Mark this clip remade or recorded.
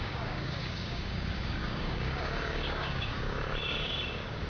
remade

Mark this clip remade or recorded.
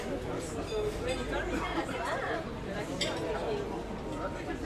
recorded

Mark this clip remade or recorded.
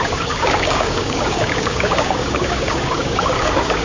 remade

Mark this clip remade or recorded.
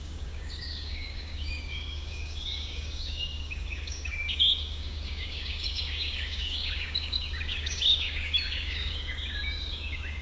remade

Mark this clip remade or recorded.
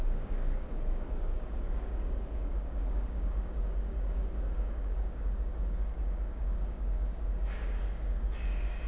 remade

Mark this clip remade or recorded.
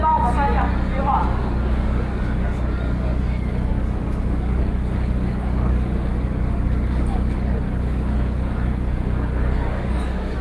remade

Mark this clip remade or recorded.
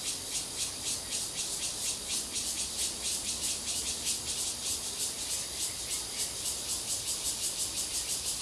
recorded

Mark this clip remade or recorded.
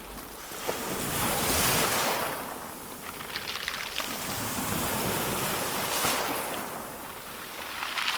recorded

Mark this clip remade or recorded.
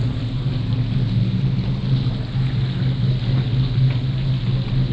recorded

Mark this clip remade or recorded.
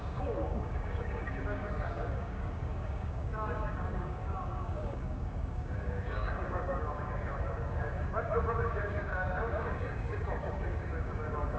remade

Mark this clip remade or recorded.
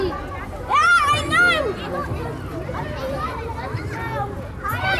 recorded